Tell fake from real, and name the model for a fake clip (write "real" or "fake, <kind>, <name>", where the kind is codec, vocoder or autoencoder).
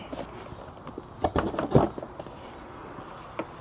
real